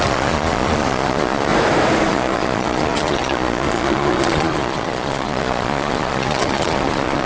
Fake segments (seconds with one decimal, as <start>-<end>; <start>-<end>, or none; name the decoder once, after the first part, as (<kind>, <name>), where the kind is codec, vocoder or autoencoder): 0.0-1.5 (vocoder, Vocos); 2.1-7.3

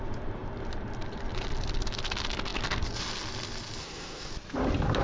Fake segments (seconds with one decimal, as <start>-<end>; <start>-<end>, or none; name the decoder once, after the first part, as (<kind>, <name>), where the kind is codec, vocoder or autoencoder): 3.8-4.3 (codec, SNAC)

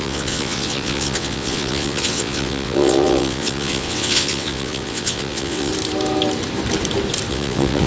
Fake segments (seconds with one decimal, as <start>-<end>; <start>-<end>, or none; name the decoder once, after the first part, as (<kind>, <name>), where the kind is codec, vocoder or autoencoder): 0.0-5.7 (vocoder, WaveNeXt); 7.3-7.9

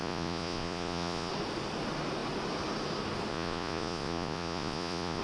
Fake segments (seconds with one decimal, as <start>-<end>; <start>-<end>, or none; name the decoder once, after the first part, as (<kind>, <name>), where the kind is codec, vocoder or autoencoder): 0.0-1.3 (vocoder, Vocos); 3.3-5.2

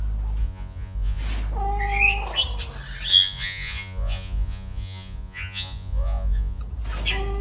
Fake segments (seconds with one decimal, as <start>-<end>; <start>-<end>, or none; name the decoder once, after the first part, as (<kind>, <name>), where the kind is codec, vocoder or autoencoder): 0.4-1.2 (vocoder, Vocos); 3.1-6.6

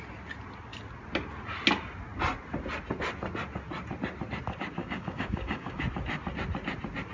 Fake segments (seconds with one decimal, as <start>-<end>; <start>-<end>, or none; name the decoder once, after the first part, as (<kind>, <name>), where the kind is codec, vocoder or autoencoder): 4.8-5.8 (codec, DAC)

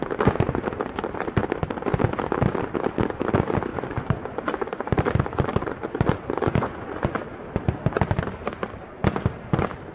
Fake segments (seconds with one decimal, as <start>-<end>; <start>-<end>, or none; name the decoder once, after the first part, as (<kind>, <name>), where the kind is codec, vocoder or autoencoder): 3.7-5.0 (vocoder, Vocos); 5.5-7.4

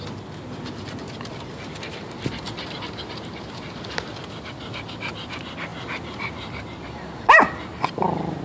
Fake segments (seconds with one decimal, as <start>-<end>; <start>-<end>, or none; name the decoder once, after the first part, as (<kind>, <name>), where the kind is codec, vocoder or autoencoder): none